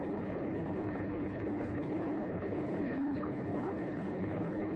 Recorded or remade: remade